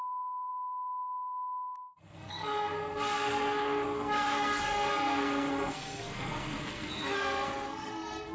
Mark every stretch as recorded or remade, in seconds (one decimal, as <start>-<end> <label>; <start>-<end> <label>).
0.0-8.3 remade